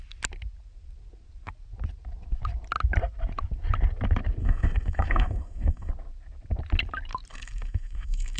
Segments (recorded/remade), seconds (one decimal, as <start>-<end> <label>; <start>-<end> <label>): 0.0-4.4 recorded; 4.4-5.9 remade; 5.9-7.3 recorded; 7.3-8.4 remade